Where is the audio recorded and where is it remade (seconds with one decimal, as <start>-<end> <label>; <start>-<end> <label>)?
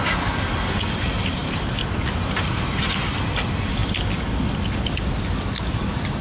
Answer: 0.0-6.2 recorded